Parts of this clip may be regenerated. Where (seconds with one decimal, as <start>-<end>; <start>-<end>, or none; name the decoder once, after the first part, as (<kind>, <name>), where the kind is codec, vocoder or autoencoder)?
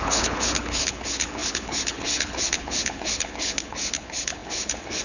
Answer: 0.0-5.0 (codec, HILCodec)